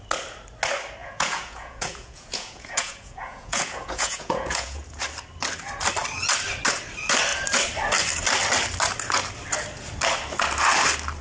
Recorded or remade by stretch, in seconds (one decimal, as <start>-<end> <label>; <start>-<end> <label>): 0.0-1.0 recorded; 1.0-5.0 remade; 5.0-11.2 recorded